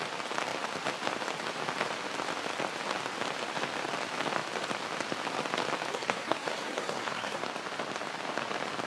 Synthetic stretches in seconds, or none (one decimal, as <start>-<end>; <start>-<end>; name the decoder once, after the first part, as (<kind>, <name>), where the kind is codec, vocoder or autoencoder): 5.9-7.4 (codec, SNAC)